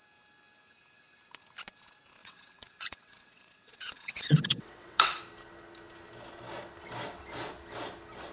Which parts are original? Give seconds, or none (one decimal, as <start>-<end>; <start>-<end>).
0.0-2.2; 5.2-8.3